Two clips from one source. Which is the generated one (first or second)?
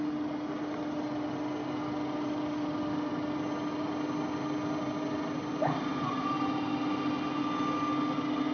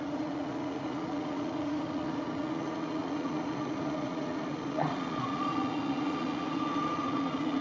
second